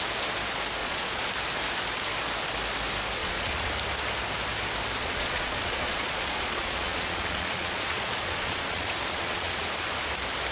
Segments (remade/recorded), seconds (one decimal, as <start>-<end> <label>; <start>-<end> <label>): 0.0-0.8 recorded; 0.8-1.3 remade; 1.3-3.2 recorded; 3.2-3.7 remade; 3.7-5.0 recorded; 5.0-9.6 remade; 9.6-10.5 recorded